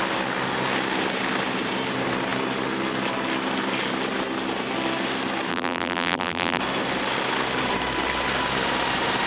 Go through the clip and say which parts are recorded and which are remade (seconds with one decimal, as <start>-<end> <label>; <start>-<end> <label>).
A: 0.0-5.5 recorded; 5.5-6.6 remade; 6.6-9.3 recorded